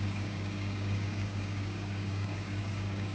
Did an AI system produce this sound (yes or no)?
yes